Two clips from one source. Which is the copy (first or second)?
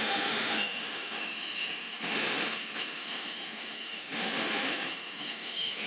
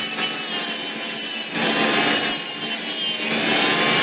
first